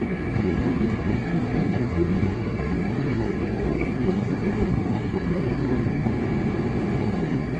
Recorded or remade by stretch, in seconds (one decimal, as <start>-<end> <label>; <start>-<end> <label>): 0.0-6.1 remade; 6.1-7.0 recorded; 7.0-7.6 remade